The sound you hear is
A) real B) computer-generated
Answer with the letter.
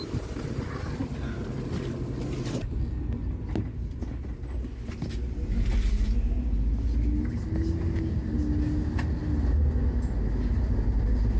A